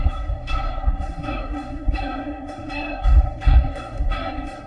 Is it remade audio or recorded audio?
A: remade